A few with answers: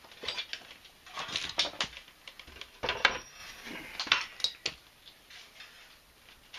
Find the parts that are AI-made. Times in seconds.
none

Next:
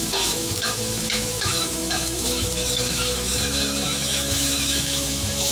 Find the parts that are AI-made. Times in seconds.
0.0-5.5 (autoencoder, DAC-VAE)

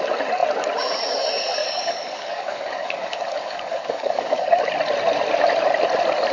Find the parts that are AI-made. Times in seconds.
1.6-4.6 (codec, DAC)

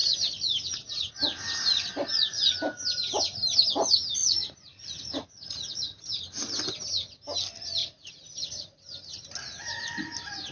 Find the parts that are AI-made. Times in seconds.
0.0-1.0 (vocoder, Vocos); 4.2-6.1; 7.8-8.8

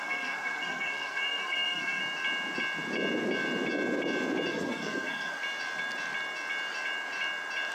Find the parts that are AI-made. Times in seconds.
0.0-2.0 (codec, SNAC); 4.5-5.4

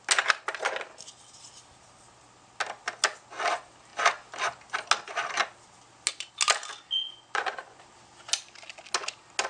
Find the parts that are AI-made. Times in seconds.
7.0-7.8 (vocoder, Vocos)

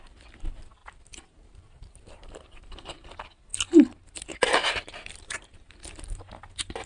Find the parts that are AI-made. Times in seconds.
0.8-3.1 (vocoder, BigVGAN v2); 4.6-5.8

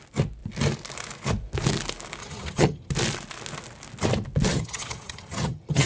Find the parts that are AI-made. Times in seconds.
2.2-2.9 (vocoder, HiFi-GAN); 4.5-5.9